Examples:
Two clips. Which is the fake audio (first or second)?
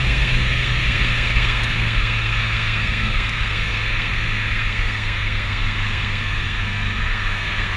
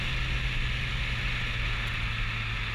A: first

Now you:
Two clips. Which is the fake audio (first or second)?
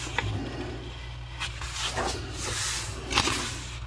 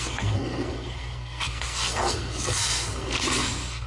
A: second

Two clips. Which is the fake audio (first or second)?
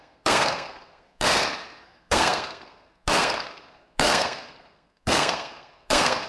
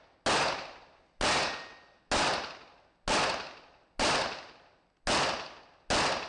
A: first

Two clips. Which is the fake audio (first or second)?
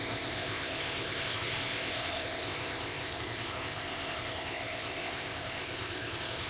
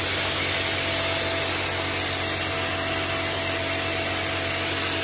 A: first